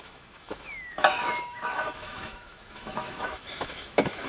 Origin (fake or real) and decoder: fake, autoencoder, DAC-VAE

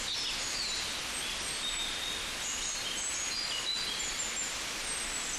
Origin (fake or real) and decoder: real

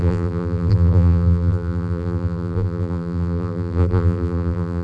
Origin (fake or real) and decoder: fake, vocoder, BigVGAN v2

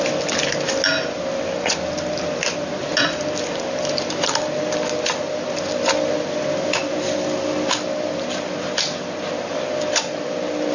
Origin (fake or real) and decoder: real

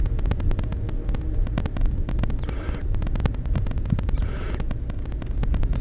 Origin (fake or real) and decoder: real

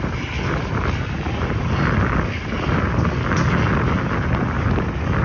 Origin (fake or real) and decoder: real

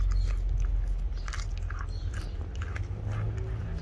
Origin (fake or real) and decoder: real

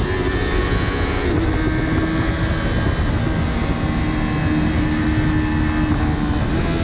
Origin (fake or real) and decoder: real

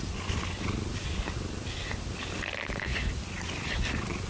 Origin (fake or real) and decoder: real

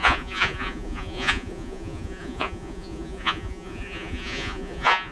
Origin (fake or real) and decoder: fake, vocoder, Vocos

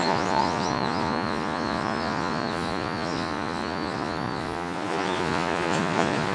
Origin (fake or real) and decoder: fake, vocoder, Vocos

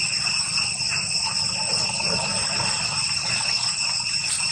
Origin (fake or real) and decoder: real